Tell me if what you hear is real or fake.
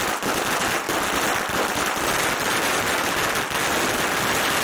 real